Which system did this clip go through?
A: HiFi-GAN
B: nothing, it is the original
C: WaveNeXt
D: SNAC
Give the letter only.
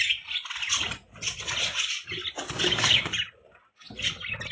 B